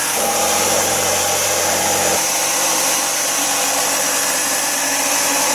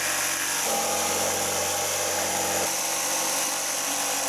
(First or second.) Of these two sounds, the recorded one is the second